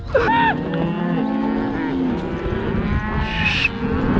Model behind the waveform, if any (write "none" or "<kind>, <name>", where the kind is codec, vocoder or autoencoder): none